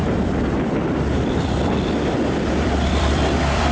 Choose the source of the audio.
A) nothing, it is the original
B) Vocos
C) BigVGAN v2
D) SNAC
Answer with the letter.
C